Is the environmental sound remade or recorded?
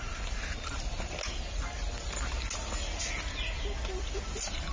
recorded